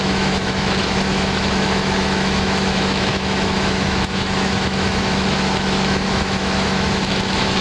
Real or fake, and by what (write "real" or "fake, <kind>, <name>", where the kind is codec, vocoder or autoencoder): fake, autoencoder, DAC-VAE